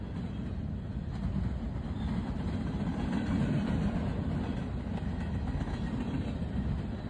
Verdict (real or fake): real